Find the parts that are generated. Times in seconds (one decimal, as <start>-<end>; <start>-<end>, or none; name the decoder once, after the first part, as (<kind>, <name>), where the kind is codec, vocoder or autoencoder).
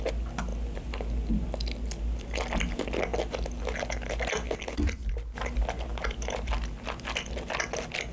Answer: none